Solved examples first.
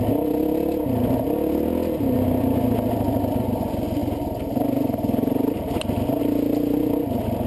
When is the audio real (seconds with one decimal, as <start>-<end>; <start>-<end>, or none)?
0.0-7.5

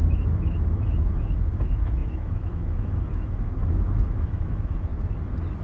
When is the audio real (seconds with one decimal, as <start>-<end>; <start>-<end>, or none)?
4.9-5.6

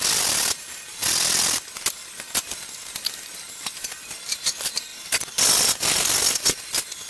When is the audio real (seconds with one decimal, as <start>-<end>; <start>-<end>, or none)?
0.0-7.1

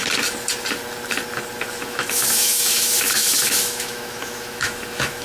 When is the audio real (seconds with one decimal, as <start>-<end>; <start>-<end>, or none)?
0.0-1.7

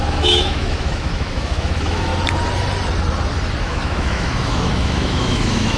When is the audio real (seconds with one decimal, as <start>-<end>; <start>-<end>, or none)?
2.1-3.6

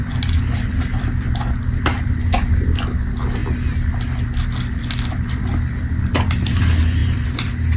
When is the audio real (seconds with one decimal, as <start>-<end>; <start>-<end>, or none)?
0.0-7.8

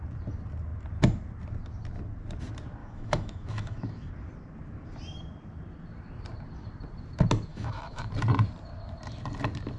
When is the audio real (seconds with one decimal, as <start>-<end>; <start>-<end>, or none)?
0.0-2.8; 4.1-7.5; 8.1-9.8

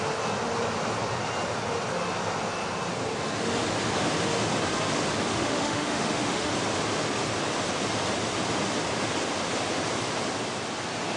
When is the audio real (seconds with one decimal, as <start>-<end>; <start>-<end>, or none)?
0.0-5.3; 6.5-11.2